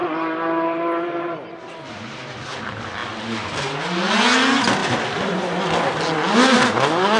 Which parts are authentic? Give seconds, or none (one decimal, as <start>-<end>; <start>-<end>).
1.9-4.8; 5.3-7.2